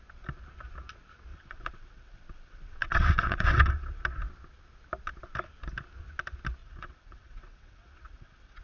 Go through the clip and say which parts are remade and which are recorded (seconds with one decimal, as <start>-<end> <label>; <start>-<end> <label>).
0.0-1.3 recorded; 1.3-4.0 remade; 4.0-6.6 recorded; 6.6-8.6 remade